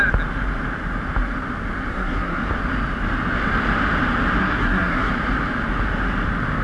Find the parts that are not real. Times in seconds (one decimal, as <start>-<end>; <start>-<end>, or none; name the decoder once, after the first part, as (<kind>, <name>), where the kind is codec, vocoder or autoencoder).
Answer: 1.9-2.5 (codec, SNAC); 4.4-5.1